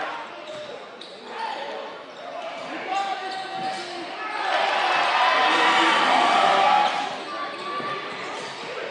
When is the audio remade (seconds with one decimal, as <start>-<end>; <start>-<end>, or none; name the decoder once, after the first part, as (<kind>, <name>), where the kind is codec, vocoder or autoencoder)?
0.0-3.1 (vocoder, BigVGAN v2); 8.2-8.9